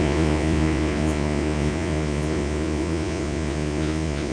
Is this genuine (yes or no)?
no